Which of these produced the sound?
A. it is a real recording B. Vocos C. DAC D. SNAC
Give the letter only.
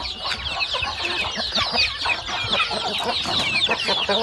A